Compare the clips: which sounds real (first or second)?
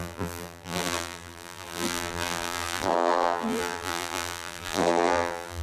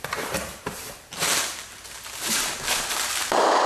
second